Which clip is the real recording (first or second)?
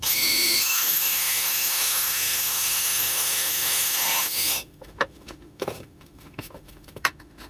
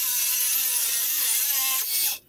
second